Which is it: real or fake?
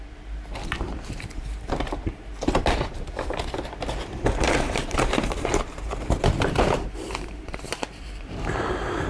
fake